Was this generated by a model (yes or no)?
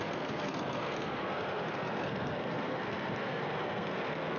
yes